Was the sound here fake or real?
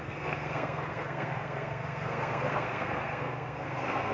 fake